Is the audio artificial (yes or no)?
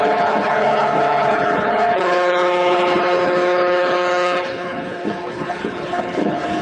yes